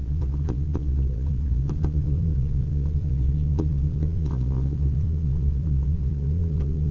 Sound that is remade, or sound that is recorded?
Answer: remade